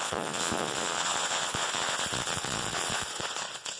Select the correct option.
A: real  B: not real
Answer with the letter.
B